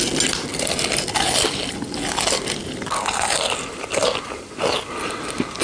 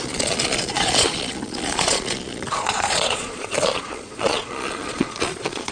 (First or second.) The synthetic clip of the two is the second